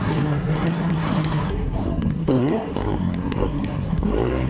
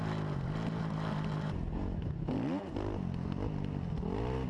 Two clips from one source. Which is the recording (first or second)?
second